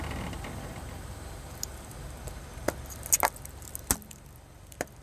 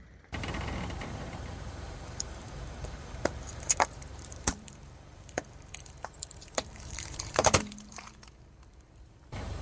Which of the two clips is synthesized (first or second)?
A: second